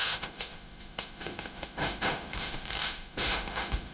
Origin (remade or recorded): remade